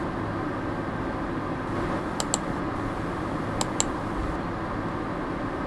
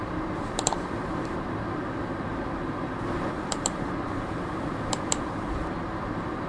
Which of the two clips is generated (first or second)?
second